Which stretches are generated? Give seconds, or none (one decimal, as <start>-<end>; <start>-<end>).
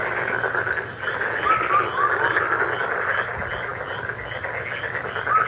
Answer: none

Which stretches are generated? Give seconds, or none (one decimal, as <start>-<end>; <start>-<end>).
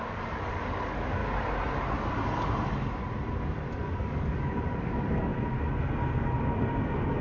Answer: 0.0-1.2; 3.4-5.3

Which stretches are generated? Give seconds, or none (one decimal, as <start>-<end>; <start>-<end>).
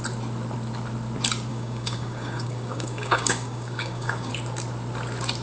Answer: 1.5-4.3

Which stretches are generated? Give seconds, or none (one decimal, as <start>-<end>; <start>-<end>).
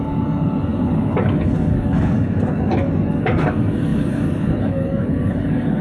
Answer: 0.0-5.8